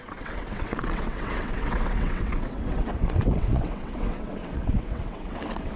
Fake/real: fake